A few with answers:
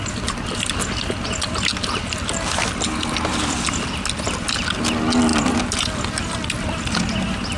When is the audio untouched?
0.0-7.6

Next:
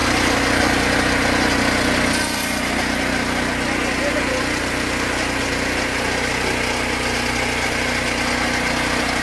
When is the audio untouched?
0.0-9.2

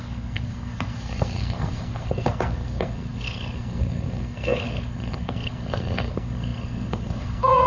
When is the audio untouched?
none

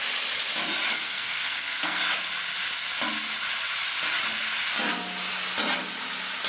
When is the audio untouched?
0.0-0.9; 2.0-6.5

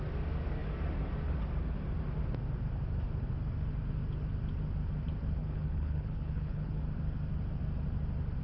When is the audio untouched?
0.0-5.4; 6.8-8.4

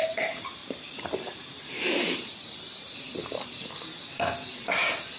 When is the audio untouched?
none